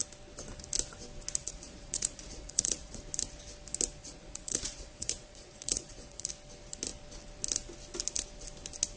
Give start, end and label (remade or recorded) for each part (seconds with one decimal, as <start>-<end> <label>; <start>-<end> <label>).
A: 0.0-1.4 recorded; 1.4-3.0 remade; 3.0-4.0 recorded; 4.0-6.3 remade; 6.3-9.0 recorded